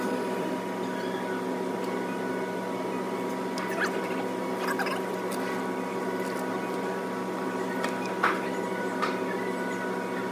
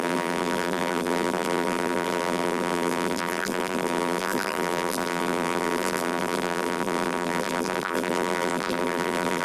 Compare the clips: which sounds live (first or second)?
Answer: first